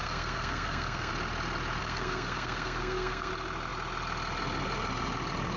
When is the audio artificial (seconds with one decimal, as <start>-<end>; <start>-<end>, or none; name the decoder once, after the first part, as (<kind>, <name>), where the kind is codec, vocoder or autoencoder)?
0.0-1.1 (codec, SNAC); 1.8-3.3

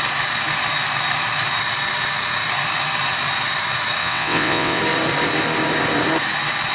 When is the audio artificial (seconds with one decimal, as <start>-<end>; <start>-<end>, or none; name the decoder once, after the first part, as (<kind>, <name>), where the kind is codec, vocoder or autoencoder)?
4.0-4.8 (vocoder, WaveNeXt)

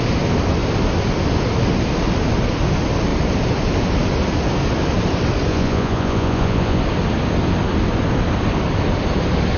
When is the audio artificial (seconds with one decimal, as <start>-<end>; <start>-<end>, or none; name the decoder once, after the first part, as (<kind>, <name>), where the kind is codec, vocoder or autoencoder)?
5.5-6.8 (vocoder, Vocos)

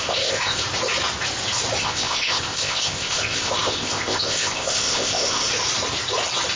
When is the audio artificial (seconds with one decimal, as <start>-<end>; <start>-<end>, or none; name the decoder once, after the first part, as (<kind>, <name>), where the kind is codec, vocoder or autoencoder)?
0.0-0.6 (codec, ZipCodec); 1.8-5.5

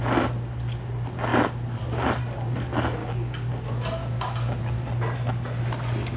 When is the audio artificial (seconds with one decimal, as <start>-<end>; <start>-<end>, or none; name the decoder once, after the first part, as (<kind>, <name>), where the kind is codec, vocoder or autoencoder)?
3.0-3.5 (codec, DAC); 4.0-4.6